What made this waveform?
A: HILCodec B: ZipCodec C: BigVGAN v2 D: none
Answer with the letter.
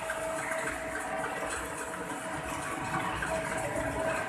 D